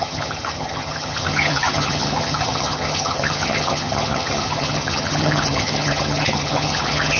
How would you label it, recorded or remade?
remade